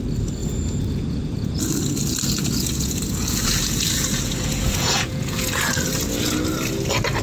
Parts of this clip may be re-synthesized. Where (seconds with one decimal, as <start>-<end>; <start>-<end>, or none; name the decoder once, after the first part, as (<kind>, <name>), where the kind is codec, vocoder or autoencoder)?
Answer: 0.4-1.7 (vocoder, Vocos); 2.4-5.5